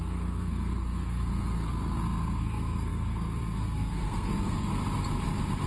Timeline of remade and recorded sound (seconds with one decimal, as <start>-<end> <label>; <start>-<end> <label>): 0.0-4.7 remade; 4.7-5.7 recorded